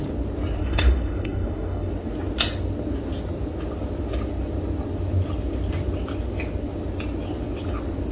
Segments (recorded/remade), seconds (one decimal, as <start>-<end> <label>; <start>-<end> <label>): 0.0-0.6 recorded; 0.6-1.9 remade; 1.9-8.1 recorded